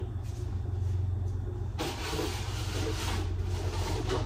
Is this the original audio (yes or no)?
yes